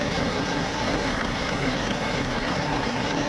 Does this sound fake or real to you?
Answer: fake